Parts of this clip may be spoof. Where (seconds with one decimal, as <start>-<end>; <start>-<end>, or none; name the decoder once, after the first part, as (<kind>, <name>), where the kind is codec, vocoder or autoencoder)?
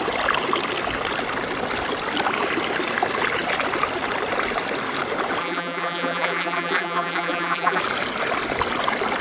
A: 5.4-7.8 (vocoder, BigVGAN v2)